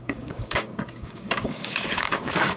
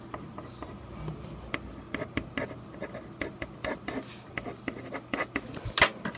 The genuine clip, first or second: second